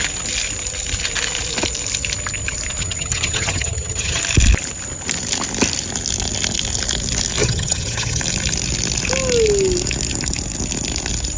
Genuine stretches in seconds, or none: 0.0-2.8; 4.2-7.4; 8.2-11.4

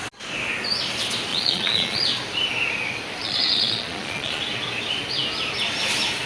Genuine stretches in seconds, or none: 0.0-1.3; 2.0-3.2; 4.4-6.3

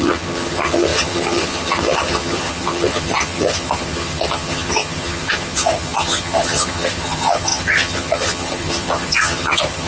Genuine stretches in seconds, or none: none

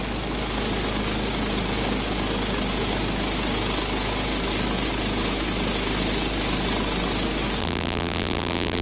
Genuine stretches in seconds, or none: 0.0-7.6

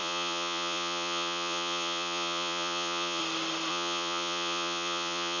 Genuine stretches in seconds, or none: 3.2-3.7

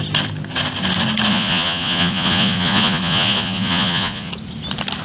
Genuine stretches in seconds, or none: 0.0-1.3; 4.3-5.0

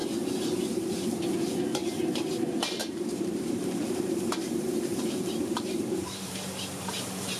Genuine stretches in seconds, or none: 0.0-2.8